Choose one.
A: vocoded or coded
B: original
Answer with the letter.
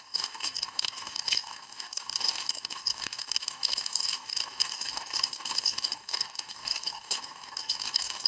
A